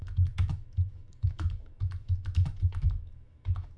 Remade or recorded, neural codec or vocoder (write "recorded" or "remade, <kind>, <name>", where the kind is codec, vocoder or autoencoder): remade, autoencoder, DAC-VAE